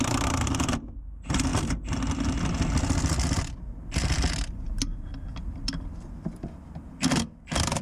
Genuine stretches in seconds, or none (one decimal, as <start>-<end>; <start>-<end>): 0.0-7.8